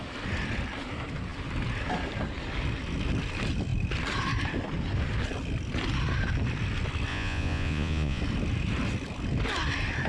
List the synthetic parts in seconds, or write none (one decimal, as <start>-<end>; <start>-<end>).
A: 7.1-8.2